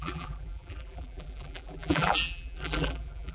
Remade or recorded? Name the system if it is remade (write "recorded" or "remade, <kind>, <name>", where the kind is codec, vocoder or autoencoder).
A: remade, vocoder, BigVGAN v2